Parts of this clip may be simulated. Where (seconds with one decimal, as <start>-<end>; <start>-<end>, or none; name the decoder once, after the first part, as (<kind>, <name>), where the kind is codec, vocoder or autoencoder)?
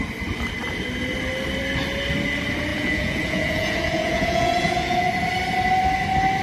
2.7-5.1 (vocoder, Vocos)